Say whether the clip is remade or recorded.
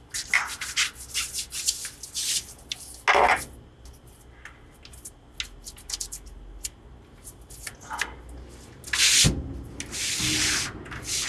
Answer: recorded